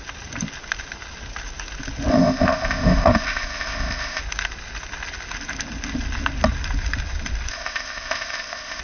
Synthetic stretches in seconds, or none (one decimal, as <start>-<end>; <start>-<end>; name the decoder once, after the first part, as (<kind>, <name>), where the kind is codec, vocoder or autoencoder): 2.1-4.2 (codec, ZipCodec); 7.5-8.8